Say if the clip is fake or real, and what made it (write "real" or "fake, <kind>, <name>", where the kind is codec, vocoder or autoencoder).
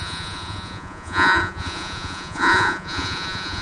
fake, vocoder, Vocos